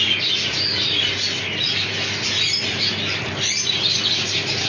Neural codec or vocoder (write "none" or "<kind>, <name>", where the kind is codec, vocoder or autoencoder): none